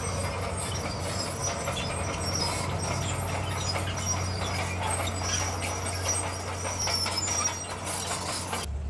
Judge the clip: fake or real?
real